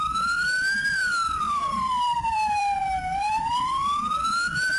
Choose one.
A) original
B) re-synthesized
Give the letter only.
B